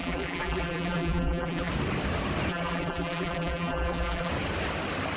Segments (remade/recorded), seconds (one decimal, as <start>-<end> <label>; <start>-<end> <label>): 0.0-1.7 remade; 1.7-2.5 recorded; 2.5-4.3 remade; 4.3-5.2 recorded